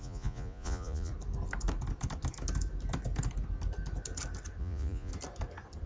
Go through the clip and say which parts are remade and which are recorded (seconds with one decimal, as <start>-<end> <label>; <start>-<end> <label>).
0.0-1.1 remade; 1.1-4.6 recorded; 4.6-5.1 remade; 5.1-5.9 recorded

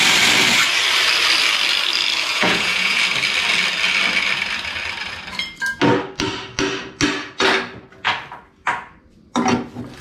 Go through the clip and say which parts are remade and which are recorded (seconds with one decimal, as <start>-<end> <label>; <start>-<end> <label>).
0.0-2.3 recorded; 2.3-3.0 remade; 3.0-10.0 recorded

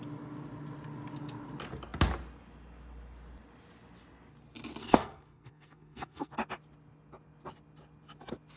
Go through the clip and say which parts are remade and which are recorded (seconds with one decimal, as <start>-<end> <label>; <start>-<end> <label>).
0.0-4.8 recorded; 4.8-6.3 remade; 6.3-8.6 recorded

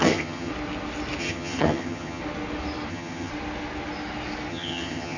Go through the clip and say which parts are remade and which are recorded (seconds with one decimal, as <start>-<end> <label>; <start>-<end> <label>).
0.0-0.5 remade; 0.5-1.2 recorded; 1.2-2.2 remade; 2.2-2.9 recorded; 2.9-3.3 remade; 3.3-4.5 recorded; 4.5-5.2 remade

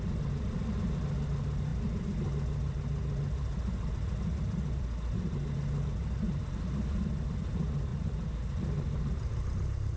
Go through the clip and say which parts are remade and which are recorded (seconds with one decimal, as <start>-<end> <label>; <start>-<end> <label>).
0.0-10.0 recorded